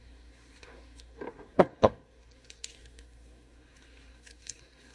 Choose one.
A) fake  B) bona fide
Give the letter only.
A